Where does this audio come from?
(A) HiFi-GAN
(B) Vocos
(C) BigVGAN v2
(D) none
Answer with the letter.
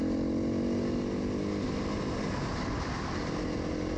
D